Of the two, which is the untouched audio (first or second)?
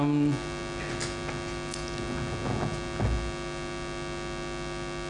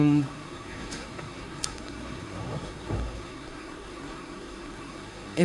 first